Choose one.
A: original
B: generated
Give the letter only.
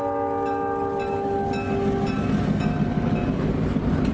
A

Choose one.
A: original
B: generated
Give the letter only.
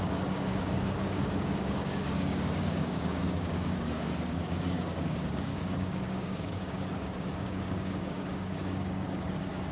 B